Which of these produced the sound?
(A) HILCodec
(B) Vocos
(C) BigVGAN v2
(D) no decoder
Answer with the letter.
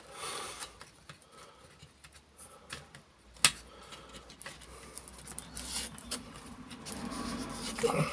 D